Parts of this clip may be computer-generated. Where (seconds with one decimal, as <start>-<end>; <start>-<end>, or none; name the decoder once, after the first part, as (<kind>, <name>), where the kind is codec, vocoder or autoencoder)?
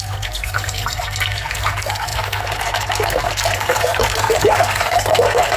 0.0-5.6 (codec, SNAC)